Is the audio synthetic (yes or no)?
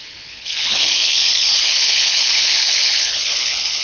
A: yes